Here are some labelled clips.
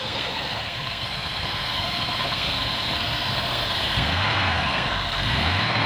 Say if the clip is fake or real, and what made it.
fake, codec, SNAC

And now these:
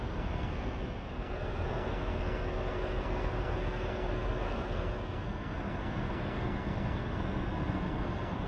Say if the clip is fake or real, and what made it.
fake, codec, SNAC